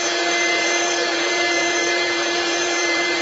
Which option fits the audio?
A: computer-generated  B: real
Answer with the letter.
A